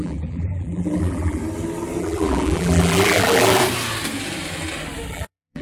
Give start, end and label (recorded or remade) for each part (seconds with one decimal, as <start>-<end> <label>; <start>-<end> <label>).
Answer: 0.0-1.4 remade; 1.4-2.0 recorded; 2.0-3.6 remade; 3.6-5.1 recorded; 5.1-5.6 remade